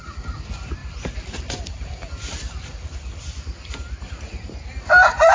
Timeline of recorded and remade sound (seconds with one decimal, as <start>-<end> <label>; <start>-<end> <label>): 0.0-5.3 recorded